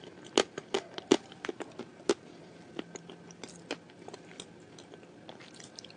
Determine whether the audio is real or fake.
real